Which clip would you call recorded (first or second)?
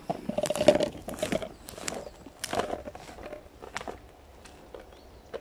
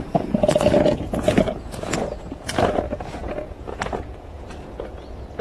first